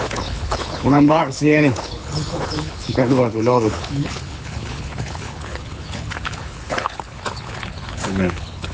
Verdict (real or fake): fake